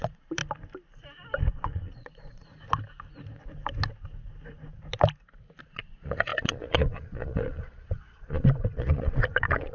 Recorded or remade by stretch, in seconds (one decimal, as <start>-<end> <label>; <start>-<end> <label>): 0.0-0.4 remade; 0.4-1.5 recorded; 1.5-2.5 remade; 2.5-5.6 recorded; 5.6-9.7 remade